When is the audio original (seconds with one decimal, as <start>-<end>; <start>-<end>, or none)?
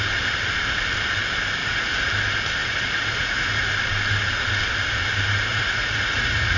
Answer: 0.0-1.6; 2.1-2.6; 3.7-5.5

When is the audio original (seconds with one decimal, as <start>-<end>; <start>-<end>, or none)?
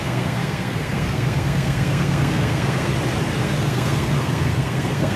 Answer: 2.9-3.4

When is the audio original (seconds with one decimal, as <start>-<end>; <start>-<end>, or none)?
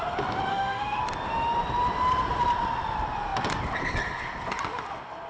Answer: 0.0-0.5; 1.0-5.3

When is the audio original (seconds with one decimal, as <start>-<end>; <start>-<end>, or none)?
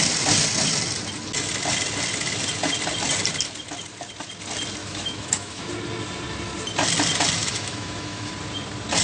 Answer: 0.0-4.8; 5.7-7.4; 8.3-9.0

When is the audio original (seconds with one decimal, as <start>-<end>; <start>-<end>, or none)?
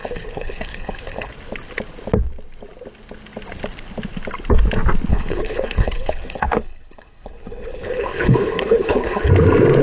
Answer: 1.3-5.1; 9.3-9.8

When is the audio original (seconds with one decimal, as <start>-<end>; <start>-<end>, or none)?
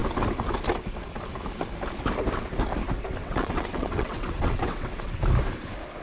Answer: 0.0-3.2; 5.3-6.0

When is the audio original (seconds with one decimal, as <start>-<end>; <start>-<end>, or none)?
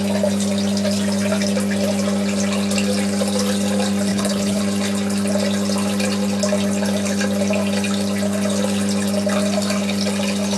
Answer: 0.0-4.1; 4.6-10.6